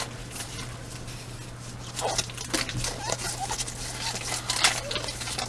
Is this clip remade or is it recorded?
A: recorded